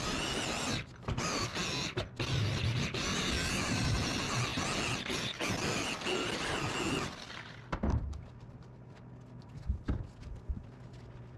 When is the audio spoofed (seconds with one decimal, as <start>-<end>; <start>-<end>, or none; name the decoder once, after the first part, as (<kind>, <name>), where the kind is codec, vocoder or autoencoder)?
none